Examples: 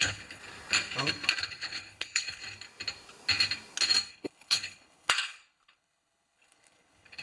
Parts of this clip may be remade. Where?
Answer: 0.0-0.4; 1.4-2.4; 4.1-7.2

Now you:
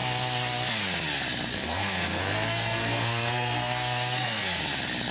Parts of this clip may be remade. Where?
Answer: 1.5-4.6

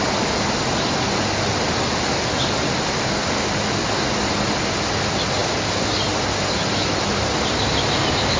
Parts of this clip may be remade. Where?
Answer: none

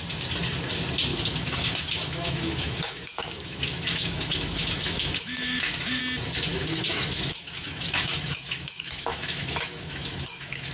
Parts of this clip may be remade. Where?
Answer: 1.1-6.0; 6.5-10.7

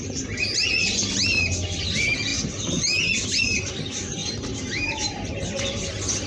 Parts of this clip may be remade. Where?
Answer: 4.2-5.6

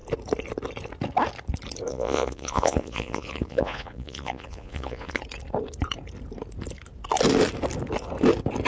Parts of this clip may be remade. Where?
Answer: 1.9-5.2

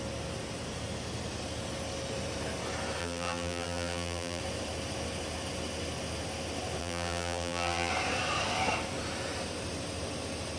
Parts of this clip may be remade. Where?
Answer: 3.0-4.4; 6.8-7.9

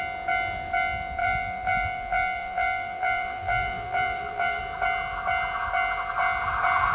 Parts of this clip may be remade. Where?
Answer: 1.2-4.6